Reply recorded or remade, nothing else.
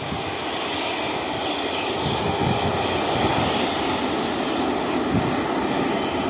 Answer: recorded